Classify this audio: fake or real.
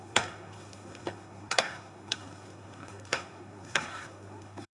fake